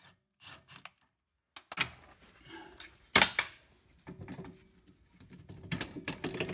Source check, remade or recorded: recorded